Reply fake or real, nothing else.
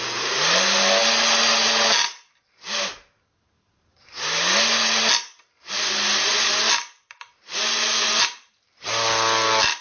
real